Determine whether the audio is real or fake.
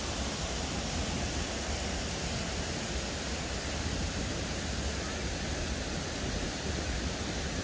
real